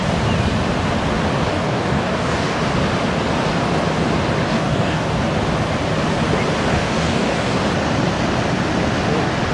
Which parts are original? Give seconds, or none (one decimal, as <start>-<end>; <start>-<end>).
0.0-1.5; 2.6-4.5; 5.3-6.7; 7.6-9.5